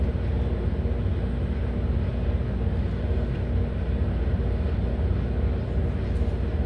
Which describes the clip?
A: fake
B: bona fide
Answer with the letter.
B